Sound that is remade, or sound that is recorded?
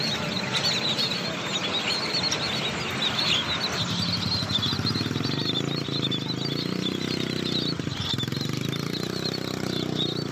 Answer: recorded